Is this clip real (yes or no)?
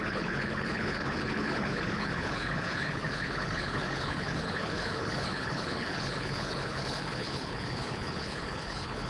no